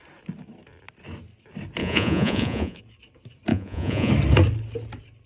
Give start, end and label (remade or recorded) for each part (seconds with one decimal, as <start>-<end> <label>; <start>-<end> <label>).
0.0-1.8 recorded; 1.8-2.8 remade; 2.8-3.5 recorded; 3.5-4.1 remade; 4.1-5.3 recorded